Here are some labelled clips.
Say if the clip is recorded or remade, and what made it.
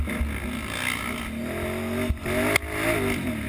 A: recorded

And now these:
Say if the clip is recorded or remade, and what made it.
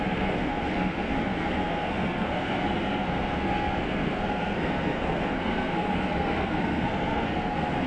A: remade, codec, SNAC